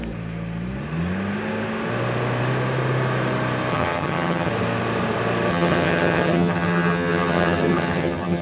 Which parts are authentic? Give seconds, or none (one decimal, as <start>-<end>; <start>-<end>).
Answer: 0.0-3.7; 4.5-5.5